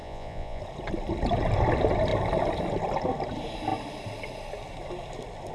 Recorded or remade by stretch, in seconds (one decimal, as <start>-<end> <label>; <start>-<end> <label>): 0.0-0.6 remade; 0.6-5.5 recorded